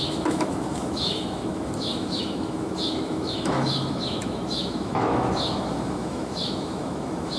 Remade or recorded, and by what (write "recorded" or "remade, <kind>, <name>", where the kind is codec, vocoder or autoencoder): remade, autoencoder, DAC-VAE